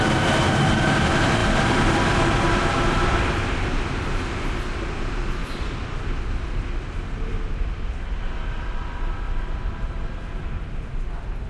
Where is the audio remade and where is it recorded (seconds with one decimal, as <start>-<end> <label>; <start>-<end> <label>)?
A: 0.0-5.4 recorded; 5.4-9.1 remade; 9.1-11.5 recorded

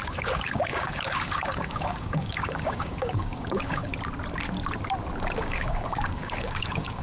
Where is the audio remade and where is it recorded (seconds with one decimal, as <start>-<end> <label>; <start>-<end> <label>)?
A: 0.0-3.9 remade; 3.9-5.4 recorded; 5.4-7.0 remade

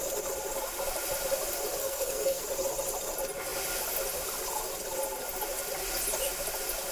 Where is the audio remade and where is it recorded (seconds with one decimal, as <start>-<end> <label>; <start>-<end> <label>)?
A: 0.0-1.8 recorded; 1.8-2.4 remade; 2.4-6.9 recorded

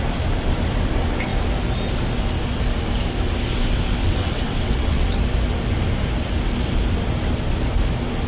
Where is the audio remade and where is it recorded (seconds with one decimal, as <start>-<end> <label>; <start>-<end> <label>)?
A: 0.0-4.0 recorded; 4.0-5.2 remade; 5.2-8.3 recorded

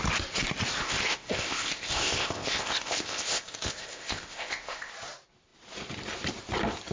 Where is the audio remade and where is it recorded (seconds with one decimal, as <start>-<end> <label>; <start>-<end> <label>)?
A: 0.0-0.8 recorded; 0.8-4.9 remade; 4.9-6.9 recorded